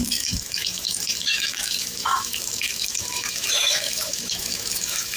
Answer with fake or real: fake